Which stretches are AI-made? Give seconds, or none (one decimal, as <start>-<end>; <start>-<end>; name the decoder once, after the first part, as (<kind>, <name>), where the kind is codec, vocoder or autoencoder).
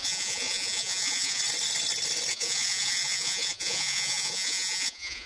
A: 0.0-1.4 (vocoder, Vocos); 2.3-5.3